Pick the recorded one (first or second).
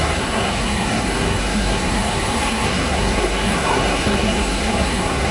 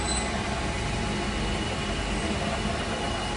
second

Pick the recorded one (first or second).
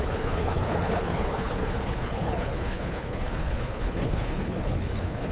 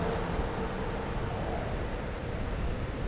second